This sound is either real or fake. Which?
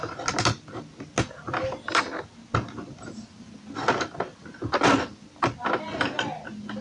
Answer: real